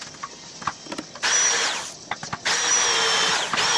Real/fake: real